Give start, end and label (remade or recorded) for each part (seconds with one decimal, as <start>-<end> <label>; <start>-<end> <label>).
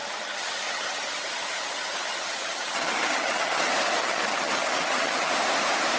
0.0-3.6 remade; 3.6-4.0 recorded; 4.0-5.3 remade; 5.3-6.0 recorded